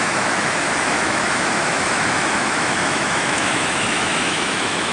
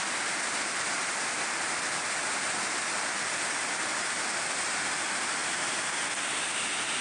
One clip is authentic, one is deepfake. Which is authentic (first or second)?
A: second